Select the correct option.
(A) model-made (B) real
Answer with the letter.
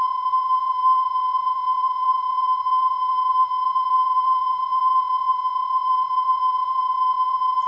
A